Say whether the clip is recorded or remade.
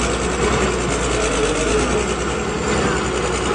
recorded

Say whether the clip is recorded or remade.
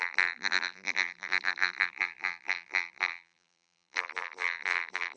remade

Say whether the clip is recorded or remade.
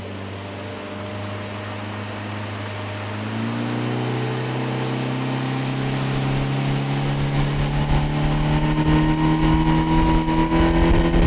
recorded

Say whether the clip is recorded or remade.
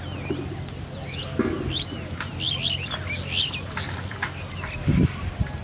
recorded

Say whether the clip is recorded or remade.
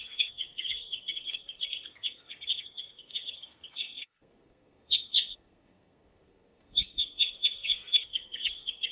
remade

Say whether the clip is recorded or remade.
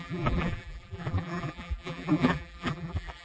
remade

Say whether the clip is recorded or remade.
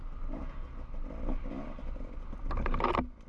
recorded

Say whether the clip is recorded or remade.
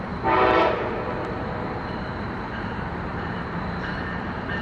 remade